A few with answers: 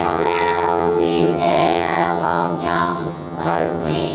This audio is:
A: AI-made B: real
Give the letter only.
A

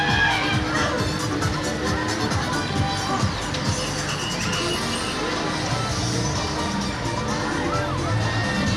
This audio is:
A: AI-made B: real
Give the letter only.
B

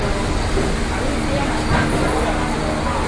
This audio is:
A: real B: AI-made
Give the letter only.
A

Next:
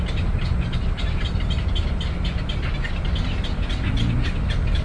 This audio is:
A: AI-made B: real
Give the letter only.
B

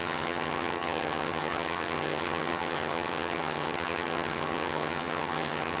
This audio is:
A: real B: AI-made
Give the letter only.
B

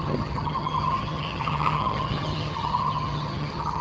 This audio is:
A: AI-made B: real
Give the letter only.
A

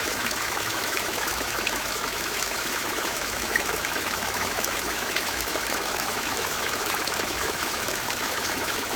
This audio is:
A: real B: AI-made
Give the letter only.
B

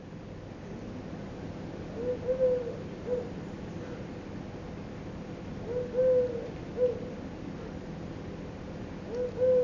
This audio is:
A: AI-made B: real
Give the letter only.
B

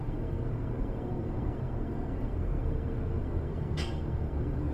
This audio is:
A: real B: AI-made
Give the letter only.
B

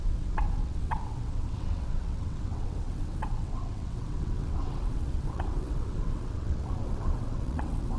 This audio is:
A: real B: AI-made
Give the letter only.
B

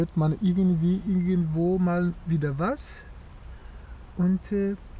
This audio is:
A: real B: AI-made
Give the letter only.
A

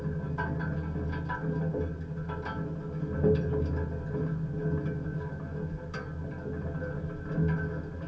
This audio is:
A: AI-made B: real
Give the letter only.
B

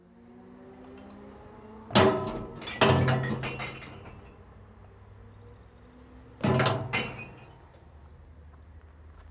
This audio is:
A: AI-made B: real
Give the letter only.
B